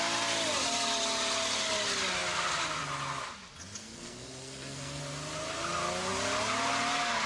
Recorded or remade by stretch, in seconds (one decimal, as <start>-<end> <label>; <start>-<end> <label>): 0.0-3.8 recorded; 3.8-5.0 remade; 5.0-7.3 recorded